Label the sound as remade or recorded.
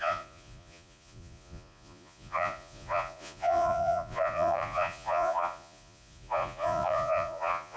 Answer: remade